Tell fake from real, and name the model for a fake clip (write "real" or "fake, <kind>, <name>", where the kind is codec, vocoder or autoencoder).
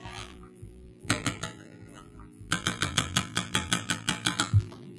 fake, vocoder, BigVGAN v2